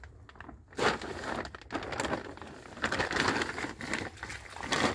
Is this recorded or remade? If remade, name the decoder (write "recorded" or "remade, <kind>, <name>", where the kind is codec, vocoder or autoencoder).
recorded